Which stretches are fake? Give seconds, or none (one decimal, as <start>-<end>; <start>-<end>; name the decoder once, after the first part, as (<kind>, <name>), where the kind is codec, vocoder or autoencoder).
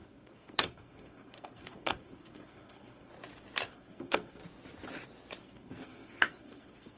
0.0-3.1 (codec, SNAC); 3.7-4.4; 5.4-7.0